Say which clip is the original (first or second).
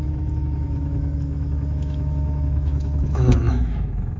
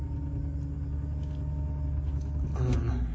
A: second